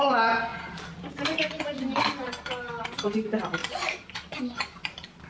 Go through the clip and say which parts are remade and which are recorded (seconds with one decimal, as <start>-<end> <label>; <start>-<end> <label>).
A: 0.0-3.6 recorded; 3.6-4.4 remade; 4.4-5.3 recorded